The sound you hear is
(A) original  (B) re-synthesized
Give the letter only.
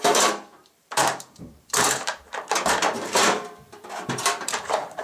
B